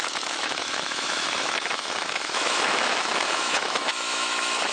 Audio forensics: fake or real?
fake